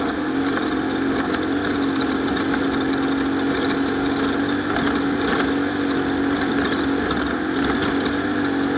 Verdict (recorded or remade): recorded